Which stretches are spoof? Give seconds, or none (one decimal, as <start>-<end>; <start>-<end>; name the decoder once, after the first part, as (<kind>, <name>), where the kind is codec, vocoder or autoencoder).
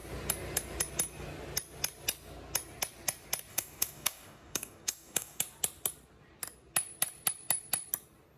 3.5-5.4 (codec, DAC)